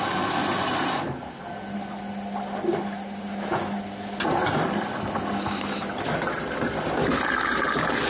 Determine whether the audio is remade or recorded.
recorded